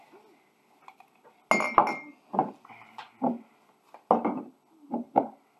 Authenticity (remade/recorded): recorded